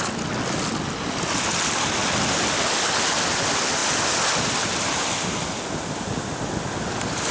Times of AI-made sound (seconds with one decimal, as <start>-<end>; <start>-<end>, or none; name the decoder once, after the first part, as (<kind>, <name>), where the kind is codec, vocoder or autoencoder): none